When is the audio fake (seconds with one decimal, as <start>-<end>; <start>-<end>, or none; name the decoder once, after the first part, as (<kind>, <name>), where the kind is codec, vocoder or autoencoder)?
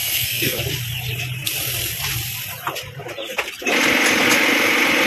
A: 0.0-0.6 (codec, SNAC)